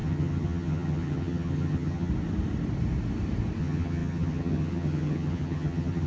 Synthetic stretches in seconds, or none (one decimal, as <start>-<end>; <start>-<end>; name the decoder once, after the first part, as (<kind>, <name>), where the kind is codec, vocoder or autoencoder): 0.0-2.1 (vocoder, HiFi-GAN); 3.6-6.1